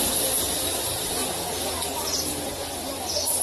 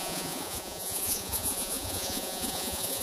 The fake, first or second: second